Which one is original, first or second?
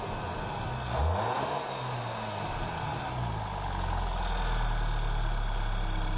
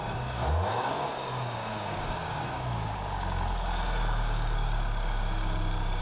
first